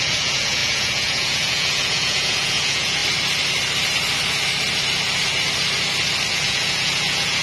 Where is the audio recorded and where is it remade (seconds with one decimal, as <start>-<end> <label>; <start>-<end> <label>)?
0.0-3.0 remade; 3.0-6.3 recorded; 6.3-7.4 remade